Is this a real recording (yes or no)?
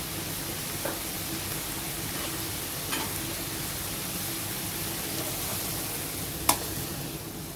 yes